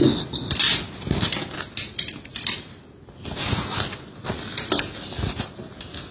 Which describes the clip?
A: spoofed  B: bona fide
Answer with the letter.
B